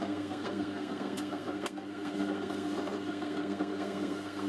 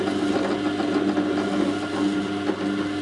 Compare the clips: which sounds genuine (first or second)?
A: second